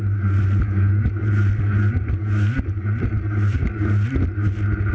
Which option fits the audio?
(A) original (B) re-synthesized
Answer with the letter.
A